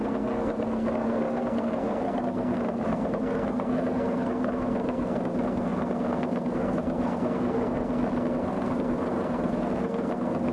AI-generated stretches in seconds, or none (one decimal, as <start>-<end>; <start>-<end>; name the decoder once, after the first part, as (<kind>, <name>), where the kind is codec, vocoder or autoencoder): 0.0-10.5 (codec, SNAC)